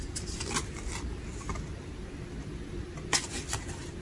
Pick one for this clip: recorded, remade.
recorded